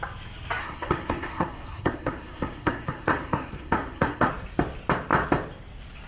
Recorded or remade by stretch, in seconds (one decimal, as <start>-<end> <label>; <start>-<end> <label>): 0.0-0.6 recorded; 0.6-4.3 remade; 4.3-6.1 recorded